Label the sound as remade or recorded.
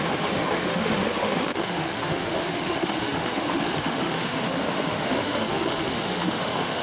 remade